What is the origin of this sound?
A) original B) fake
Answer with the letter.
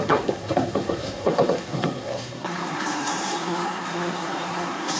B